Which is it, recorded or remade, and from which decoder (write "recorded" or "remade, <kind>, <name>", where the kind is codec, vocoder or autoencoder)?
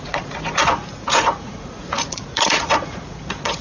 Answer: remade, vocoder, Vocos